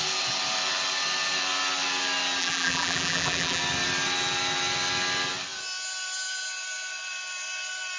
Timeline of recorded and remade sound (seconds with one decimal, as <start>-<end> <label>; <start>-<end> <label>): 0.0-2.4 recorded; 2.4-3.6 remade; 3.6-8.0 recorded